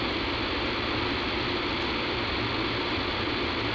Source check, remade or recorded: recorded